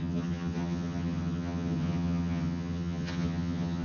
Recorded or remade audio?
remade